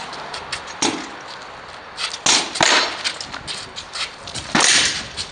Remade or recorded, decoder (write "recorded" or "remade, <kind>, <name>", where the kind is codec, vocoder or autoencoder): recorded